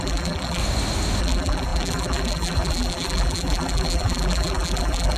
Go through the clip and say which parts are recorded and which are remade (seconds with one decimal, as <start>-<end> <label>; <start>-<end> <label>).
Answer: 0.0-0.6 remade; 0.6-1.2 recorded; 1.2-5.2 remade